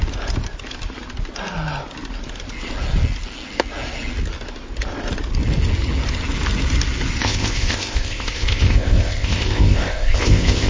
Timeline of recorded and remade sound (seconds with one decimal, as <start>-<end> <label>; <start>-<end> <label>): 0.0-7.2 recorded; 7.2-10.7 remade